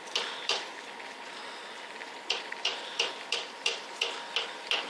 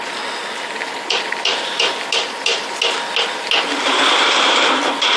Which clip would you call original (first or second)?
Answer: second